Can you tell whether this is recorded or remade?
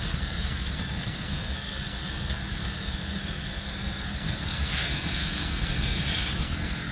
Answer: remade